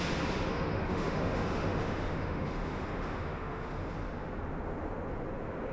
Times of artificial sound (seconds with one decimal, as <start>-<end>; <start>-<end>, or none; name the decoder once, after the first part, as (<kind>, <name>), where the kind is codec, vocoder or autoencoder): 0.5-3.9 (autoencoder, DAC-VAE)